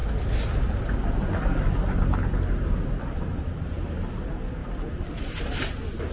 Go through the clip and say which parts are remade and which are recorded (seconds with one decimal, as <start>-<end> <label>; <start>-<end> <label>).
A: 0.0-4.6 recorded; 4.6-5.1 remade; 5.1-6.1 recorded